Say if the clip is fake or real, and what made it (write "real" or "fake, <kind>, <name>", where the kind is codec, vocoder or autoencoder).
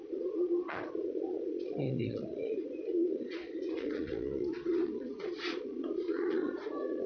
fake, vocoder, Vocos